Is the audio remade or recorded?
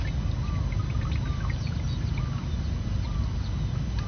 recorded